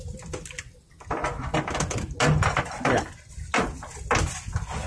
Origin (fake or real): real